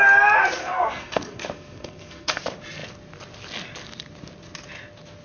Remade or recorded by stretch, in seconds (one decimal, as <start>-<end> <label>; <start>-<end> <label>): 0.0-0.6 recorded; 0.6-2.4 remade; 2.4-5.2 recorded